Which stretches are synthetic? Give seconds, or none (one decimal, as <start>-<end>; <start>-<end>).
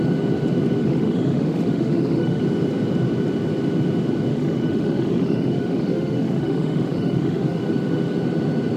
0.8-2.4; 4.3-7.6